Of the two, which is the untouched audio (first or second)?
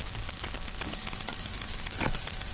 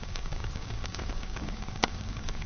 first